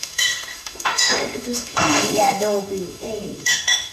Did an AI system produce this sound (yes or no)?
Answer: yes